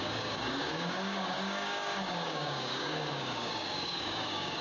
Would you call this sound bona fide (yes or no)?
no